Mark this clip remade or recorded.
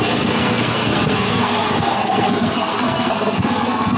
remade